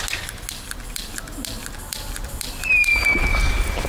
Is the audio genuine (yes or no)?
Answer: yes